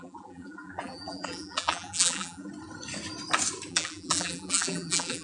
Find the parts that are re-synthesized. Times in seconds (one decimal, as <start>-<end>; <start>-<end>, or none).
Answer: 0.0-2.5; 3.7-5.2